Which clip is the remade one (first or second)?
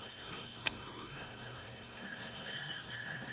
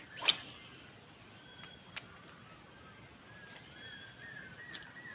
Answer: first